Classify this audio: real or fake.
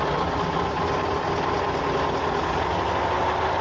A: real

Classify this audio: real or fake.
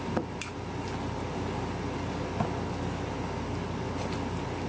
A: real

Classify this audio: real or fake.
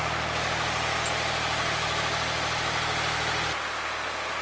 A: real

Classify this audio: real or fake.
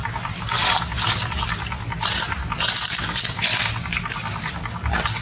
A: real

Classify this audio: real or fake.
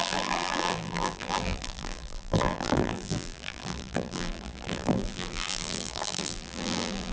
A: fake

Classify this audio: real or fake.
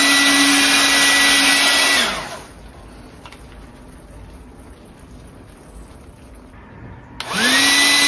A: real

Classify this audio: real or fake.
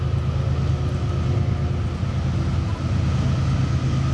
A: real